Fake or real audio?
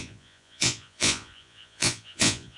fake